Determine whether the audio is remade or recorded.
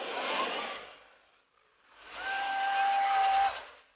recorded